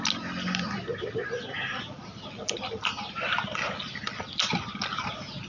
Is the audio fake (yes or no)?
no